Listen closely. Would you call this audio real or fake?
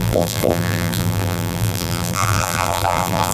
fake